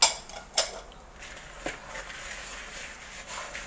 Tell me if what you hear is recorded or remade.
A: recorded